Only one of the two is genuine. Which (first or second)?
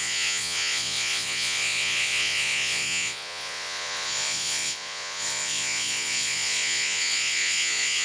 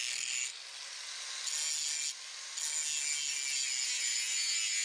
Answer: second